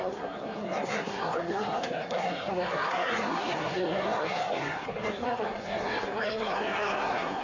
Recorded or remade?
remade